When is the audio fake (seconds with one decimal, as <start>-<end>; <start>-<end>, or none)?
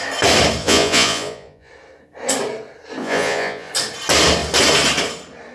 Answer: 0.6-1.7; 3.0-3.7